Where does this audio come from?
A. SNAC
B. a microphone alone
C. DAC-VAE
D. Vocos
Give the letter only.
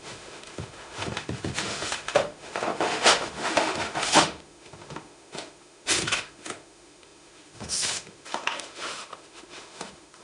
C